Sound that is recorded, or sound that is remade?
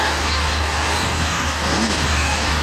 remade